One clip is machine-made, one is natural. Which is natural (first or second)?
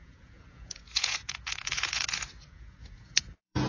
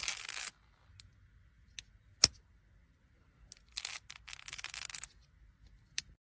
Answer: second